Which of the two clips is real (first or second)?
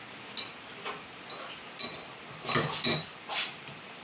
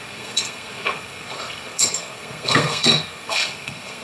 first